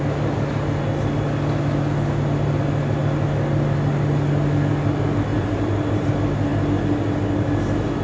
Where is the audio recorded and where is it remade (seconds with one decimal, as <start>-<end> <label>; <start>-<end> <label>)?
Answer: 0.0-5.3 recorded; 5.3-6.1 remade; 6.1-8.0 recorded

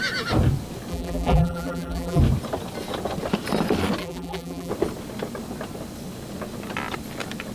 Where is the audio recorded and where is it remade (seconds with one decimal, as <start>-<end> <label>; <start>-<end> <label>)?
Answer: 0.0-0.9 recorded; 0.9-2.2 remade; 2.2-4.0 recorded; 4.0-4.7 remade; 4.7-7.5 recorded

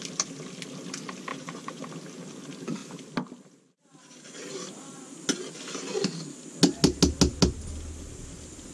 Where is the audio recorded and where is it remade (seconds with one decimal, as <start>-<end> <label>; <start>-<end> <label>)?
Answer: 0.0-1.3 recorded; 1.3-1.8 remade; 1.8-8.7 recorded